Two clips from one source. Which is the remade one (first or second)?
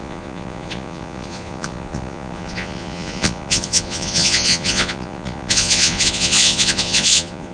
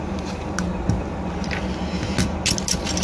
first